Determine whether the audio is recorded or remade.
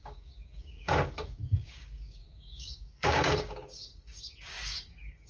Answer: remade